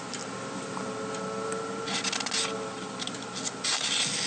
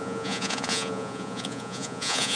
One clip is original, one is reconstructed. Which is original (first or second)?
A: first